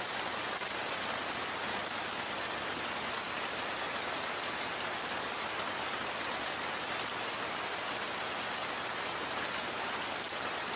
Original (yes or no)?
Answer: yes